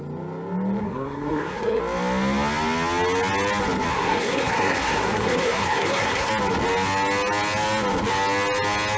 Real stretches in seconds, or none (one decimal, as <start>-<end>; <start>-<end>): 0.0-0.8; 1.8-3.9; 6.3-9.0